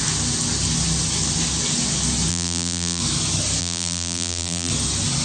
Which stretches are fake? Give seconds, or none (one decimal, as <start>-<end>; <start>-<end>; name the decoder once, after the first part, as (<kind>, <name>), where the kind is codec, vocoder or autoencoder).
2.3-3.0 (vocoder, BigVGAN v2); 3.6-4.7